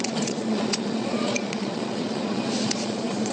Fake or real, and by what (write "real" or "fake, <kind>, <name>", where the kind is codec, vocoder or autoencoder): fake, vocoder, Vocos